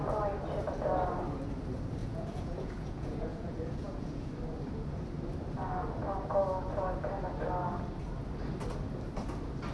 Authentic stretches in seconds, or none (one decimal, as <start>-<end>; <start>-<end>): 0.0-2.0; 4.3-9.7